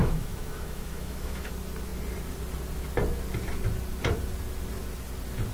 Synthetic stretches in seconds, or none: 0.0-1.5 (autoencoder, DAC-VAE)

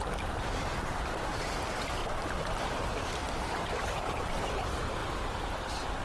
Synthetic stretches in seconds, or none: 0.0-2.0 (vocoder, BigVGAN v2); 3.3-6.0

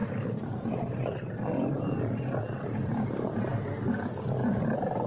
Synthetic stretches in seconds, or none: 0.0-3.1 (vocoder, BigVGAN v2); 4.4-5.1

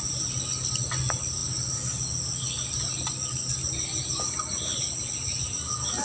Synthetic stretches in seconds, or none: none